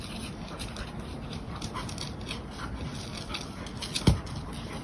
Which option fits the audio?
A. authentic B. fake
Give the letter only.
A